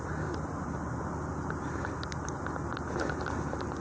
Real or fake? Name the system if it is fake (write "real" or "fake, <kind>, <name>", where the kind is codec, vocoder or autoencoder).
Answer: real